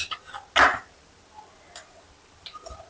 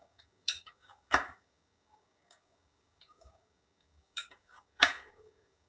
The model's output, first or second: second